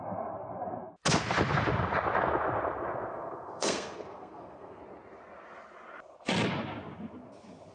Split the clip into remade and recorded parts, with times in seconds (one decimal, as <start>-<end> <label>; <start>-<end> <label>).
0.0-3.1 recorded; 3.1-4.8 remade; 4.8-7.7 recorded